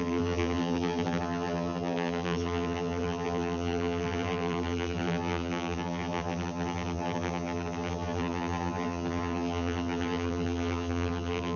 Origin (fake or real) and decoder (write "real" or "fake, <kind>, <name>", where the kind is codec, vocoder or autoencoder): fake, vocoder, BigVGAN v2